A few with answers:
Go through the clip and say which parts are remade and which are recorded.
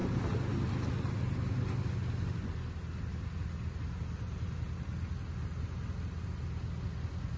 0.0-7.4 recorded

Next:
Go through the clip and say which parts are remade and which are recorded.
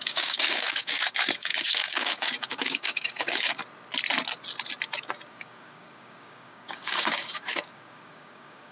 0.0-3.6 remade; 3.6-5.3 recorded; 5.3-8.7 remade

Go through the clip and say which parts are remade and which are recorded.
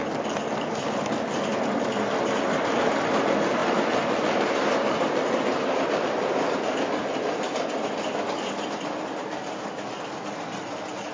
0.0-11.1 recorded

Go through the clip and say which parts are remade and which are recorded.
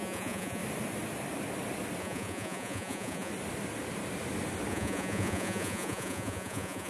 0.0-0.6 remade; 0.6-2.0 recorded; 2.0-3.3 remade; 3.3-4.7 recorded; 4.7-6.9 remade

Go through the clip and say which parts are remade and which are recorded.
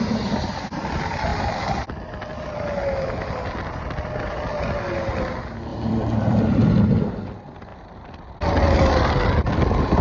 0.0-5.7 recorded; 5.7-6.8 remade; 6.8-7.7 recorded; 7.7-8.5 remade; 8.5-10.0 recorded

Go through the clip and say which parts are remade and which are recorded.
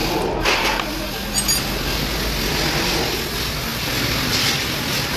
0.0-5.2 recorded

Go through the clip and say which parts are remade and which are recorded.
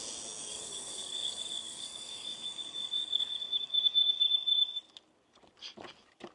0.0-0.4 recorded; 0.4-4.2 remade; 4.2-6.3 recorded